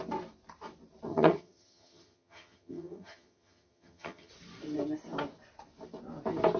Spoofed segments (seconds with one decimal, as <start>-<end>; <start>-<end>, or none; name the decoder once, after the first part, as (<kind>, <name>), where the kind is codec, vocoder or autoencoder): 1.1-4.3 (vocoder, HiFi-GAN)